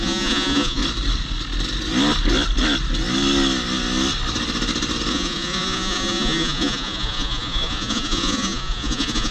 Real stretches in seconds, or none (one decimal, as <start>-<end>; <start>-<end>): 0.8-5.1